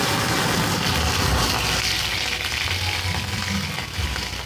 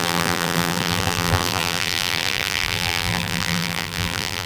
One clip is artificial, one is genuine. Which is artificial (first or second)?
second